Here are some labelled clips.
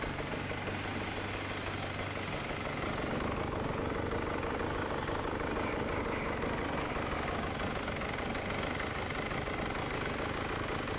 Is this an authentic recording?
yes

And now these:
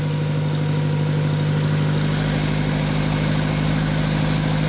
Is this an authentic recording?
yes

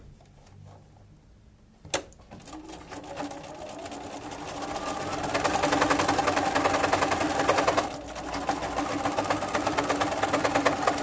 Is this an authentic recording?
yes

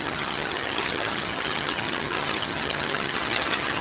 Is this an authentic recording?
no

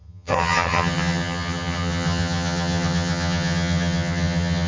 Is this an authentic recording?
no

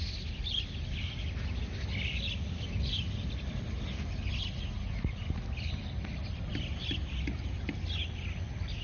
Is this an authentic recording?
yes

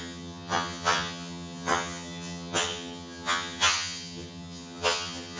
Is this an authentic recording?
no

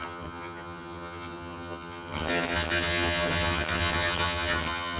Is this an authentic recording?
no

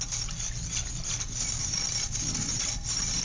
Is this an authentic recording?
yes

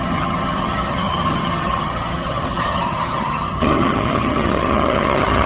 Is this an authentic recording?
no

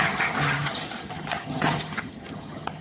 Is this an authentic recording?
no